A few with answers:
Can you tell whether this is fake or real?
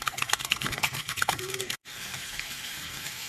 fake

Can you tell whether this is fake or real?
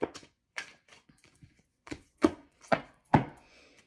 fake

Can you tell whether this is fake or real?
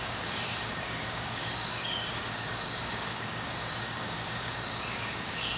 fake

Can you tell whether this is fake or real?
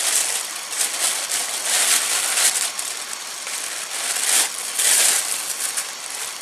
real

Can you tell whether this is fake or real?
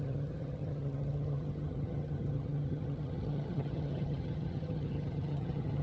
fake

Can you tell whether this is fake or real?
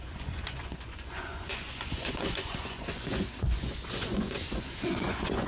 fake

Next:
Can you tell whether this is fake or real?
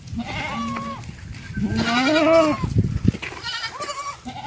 real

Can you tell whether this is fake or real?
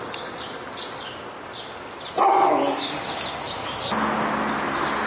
real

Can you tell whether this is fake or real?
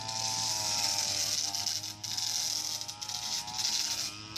real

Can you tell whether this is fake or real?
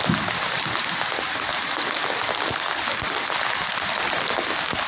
real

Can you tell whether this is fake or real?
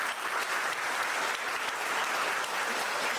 real